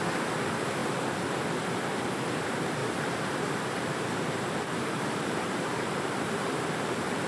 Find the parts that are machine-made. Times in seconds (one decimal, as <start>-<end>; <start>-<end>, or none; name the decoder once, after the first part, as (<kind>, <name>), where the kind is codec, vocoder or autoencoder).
2.8-7.3 (vocoder, BigVGAN v2)